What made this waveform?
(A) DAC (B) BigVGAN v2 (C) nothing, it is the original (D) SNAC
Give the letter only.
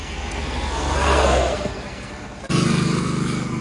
D